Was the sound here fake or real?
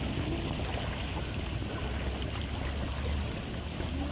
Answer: real